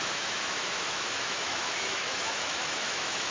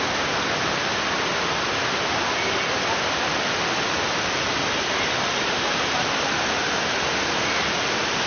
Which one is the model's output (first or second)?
first